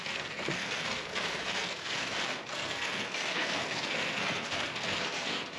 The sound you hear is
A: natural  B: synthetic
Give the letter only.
B